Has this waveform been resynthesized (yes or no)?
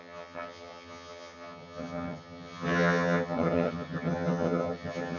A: yes